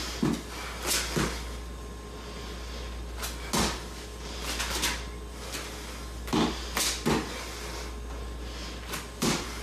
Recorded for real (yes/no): yes